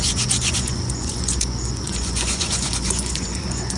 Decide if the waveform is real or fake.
fake